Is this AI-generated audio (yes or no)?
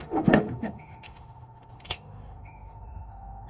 yes